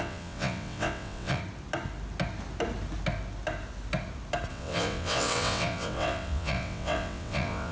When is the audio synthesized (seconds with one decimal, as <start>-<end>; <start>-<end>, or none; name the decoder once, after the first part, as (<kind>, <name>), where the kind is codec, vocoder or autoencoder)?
0.0-1.4 (vocoder, WaveNeXt); 4.5-7.7